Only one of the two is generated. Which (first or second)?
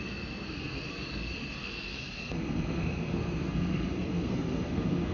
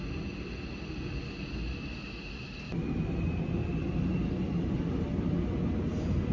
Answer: first